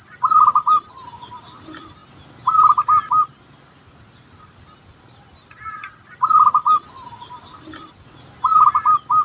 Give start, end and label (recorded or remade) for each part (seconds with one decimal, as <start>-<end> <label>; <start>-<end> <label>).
0.0-9.2 recorded